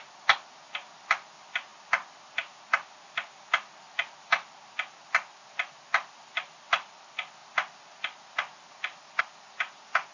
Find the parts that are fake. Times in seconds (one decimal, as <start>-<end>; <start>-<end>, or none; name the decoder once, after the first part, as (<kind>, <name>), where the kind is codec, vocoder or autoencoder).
none